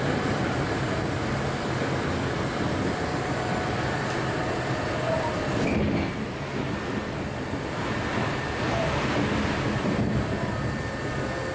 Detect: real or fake real